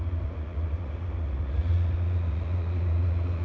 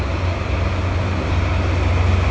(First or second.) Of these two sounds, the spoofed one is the first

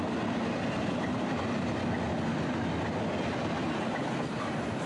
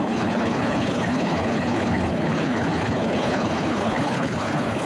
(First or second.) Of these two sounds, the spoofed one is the second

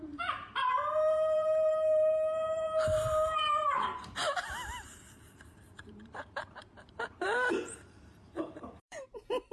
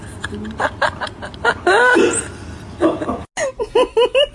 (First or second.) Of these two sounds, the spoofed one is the first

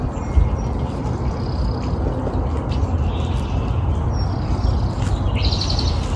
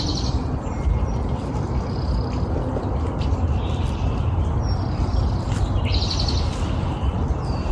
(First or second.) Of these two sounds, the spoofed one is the second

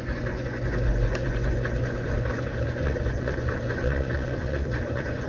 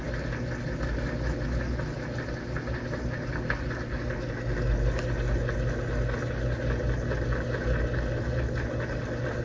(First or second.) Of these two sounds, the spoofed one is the first